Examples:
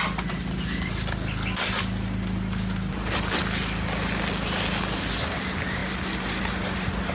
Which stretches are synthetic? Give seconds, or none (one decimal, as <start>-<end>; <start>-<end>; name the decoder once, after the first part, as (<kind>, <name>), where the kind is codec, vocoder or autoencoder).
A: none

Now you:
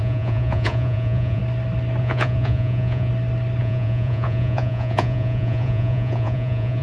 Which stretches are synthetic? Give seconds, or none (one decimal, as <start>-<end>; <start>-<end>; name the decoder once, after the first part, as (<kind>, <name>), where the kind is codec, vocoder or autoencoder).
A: 0.0-1.4 (vocoder, Vocos); 2.0-3.1; 3.6-6.8

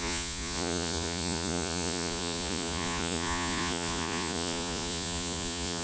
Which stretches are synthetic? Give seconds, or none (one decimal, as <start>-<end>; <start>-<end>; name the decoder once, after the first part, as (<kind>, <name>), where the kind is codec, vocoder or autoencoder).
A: 0.0-5.8 (vocoder, Vocos)

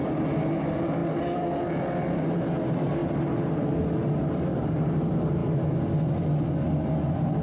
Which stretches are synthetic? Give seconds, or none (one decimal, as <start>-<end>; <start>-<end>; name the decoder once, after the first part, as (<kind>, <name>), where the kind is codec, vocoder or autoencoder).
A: none

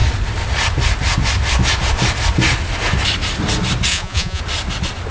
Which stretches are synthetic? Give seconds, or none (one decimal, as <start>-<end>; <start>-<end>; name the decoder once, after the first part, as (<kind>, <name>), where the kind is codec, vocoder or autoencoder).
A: 3.9-4.4 (vocoder, Vocos)